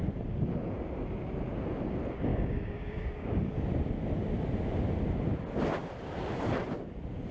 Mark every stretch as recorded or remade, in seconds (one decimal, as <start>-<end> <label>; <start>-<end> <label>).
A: 0.0-2.3 recorded; 2.3-3.4 remade; 3.4-7.3 recorded